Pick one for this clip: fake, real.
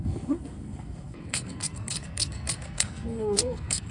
fake